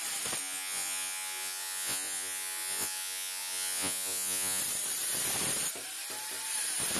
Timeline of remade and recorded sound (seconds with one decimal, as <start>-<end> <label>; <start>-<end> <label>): 0.0-0.4 recorded; 0.4-4.6 remade; 4.6-7.0 recorded